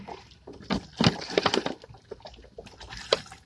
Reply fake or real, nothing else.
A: real